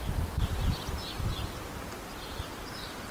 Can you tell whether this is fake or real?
real